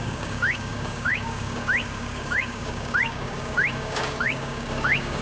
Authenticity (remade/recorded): remade